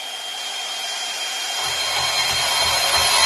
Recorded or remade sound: recorded